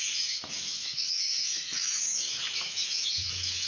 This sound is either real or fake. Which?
fake